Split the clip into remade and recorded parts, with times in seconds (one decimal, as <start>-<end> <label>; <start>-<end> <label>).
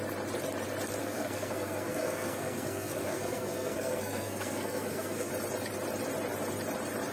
0.0-1.0 recorded; 1.0-5.3 remade; 5.3-7.1 recorded